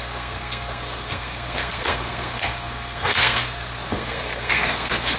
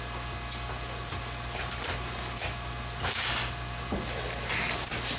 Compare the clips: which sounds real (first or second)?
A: second